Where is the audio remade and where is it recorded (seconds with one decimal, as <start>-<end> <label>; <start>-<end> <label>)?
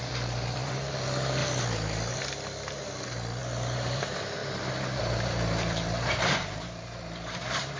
0.0-1.4 remade; 1.4-3.4 recorded; 3.4-7.8 remade